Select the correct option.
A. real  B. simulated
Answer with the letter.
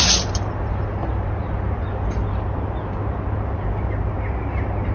A